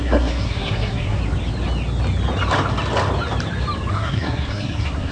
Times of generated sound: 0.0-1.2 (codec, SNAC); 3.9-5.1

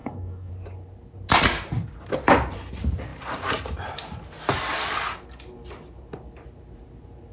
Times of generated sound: 0.0-0.5 (codec, DAC)

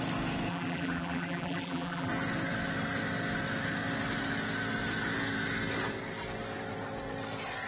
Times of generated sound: 0.5-2.1 (vocoder, BigVGAN v2)